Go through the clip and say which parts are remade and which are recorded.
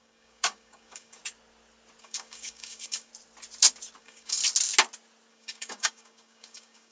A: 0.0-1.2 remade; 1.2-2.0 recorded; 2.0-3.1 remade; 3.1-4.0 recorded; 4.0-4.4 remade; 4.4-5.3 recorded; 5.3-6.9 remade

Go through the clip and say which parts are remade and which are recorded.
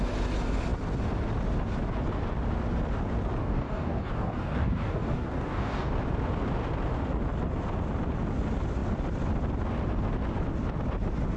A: 0.0-3.4 recorded; 3.4-5.9 remade; 5.9-11.4 recorded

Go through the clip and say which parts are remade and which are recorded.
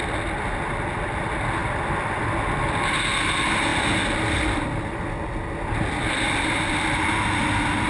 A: 0.0-7.9 recorded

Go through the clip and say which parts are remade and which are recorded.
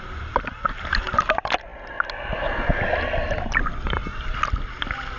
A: 0.0-5.2 recorded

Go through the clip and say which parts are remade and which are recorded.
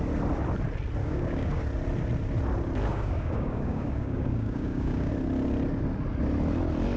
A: 0.0-1.0 recorded; 1.0-1.6 remade; 1.6-2.9 recorded; 2.9-5.1 remade; 5.1-7.0 recorded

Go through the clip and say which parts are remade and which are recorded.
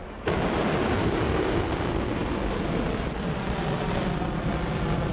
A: 0.0-1.0 recorded; 1.0-1.6 remade; 1.6-5.1 recorded